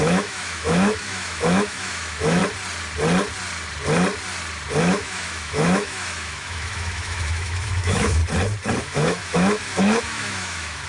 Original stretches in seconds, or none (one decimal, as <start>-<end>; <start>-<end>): 2.4-4.8; 8.2-8.8